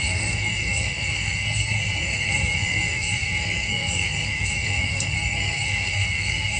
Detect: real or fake fake